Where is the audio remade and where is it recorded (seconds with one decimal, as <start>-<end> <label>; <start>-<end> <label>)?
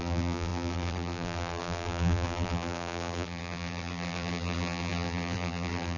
0.0-6.0 remade